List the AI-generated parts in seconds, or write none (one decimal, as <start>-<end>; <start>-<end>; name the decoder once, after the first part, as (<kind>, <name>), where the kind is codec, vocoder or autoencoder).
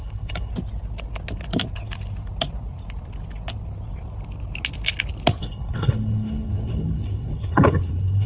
0.0-0.5 (codec, HILCodec); 5.4-8.3